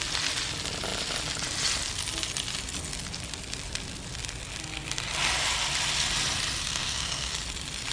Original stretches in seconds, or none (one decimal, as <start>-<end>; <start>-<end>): 0.0-6.6; 7.3-7.9